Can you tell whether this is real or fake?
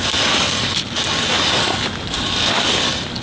real